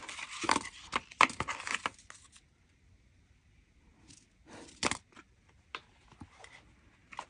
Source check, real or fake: real